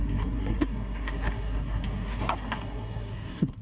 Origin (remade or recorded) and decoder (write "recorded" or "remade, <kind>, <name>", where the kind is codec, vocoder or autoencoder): remade, codec, SNAC